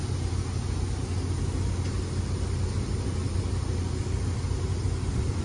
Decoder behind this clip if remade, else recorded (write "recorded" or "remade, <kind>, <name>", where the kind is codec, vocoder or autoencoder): recorded